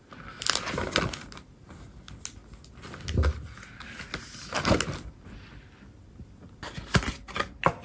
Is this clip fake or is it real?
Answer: real